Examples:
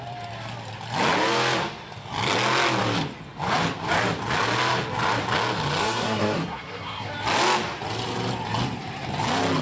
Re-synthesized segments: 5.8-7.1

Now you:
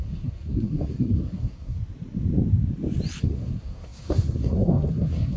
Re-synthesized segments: 0.0-1.8; 3.2-5.4

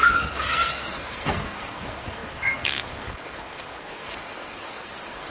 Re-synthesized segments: 0.0-5.3

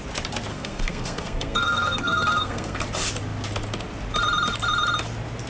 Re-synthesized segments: 0.5-2.8

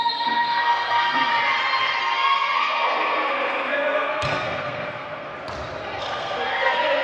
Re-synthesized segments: 0.0-1.3; 2.0-5.3; 6.0-7.0

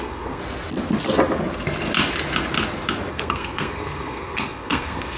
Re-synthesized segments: 0.0-0.4; 3.1-5.2